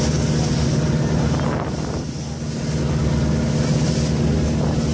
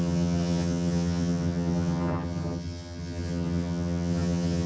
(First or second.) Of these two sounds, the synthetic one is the second